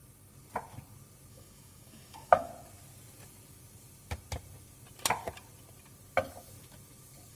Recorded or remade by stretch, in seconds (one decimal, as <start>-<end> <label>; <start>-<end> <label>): 0.0-1.3 recorded; 1.3-2.5 remade; 2.5-7.3 recorded